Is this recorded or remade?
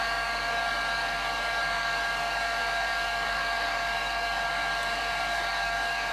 remade